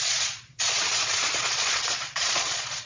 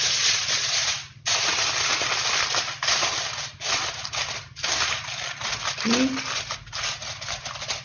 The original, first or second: second